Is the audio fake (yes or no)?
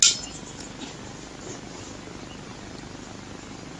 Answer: no